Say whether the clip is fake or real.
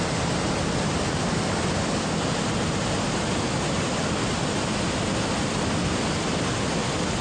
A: real